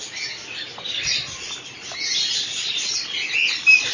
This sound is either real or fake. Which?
real